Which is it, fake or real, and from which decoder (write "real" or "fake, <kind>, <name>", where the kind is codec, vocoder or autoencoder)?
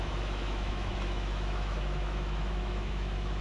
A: fake, autoencoder, DAC-VAE